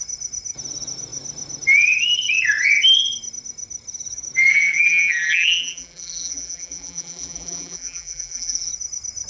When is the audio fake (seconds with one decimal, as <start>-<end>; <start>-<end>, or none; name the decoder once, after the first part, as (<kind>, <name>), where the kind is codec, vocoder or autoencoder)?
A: 4.5-8.7 (vocoder, BigVGAN v2)